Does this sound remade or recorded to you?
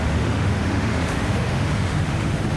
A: remade